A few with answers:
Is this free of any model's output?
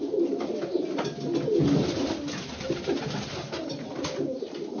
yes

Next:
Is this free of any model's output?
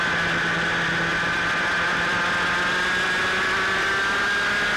yes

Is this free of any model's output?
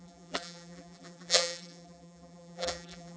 no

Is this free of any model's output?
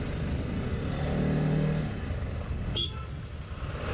yes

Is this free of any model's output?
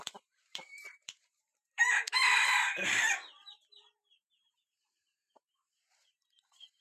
no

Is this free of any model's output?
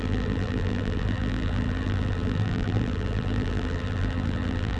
no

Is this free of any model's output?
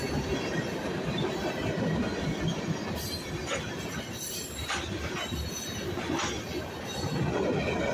yes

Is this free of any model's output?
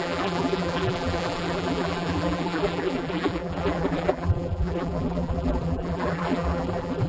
no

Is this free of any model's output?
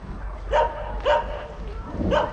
yes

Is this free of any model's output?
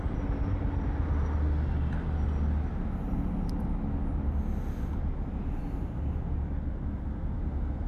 yes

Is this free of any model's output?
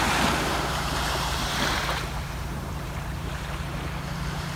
no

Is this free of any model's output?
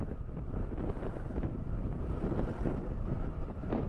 no